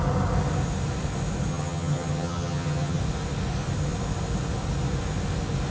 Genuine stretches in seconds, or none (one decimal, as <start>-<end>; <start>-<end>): 0.0-1.5; 3.0-5.7